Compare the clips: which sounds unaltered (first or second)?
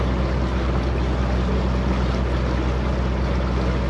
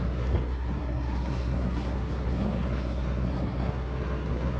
first